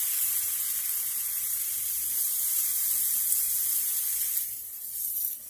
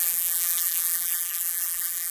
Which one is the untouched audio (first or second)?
first